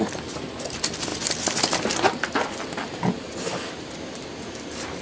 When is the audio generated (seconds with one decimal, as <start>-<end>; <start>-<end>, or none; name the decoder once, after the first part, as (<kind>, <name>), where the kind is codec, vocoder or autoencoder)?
none